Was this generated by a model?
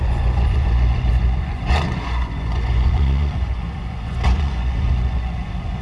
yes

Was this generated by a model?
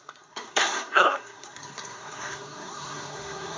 yes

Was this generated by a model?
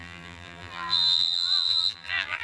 yes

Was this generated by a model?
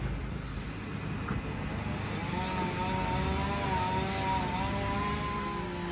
no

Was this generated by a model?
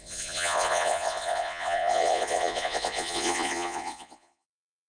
yes